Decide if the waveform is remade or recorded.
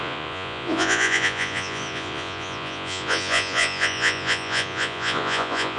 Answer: remade